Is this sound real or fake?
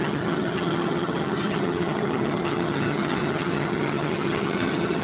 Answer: fake